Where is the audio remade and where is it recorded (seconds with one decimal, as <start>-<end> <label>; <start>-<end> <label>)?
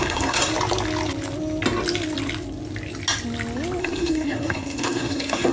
0.0-0.5 remade; 0.5-3.8 recorded; 3.8-5.5 remade